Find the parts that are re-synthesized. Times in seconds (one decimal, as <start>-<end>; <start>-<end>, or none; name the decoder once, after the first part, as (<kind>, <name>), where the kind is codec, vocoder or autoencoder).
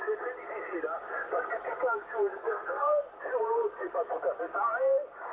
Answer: 2.3-3.1 (codec, SNAC)